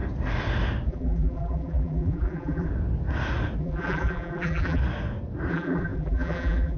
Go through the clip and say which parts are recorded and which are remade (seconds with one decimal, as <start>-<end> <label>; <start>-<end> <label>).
0.0-0.9 recorded; 0.9-2.7 remade; 2.7-3.6 recorded; 3.6-4.8 remade; 4.8-5.5 recorded; 5.5-6.8 remade